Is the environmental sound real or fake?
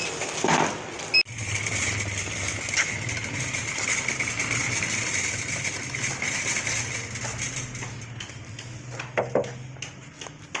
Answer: real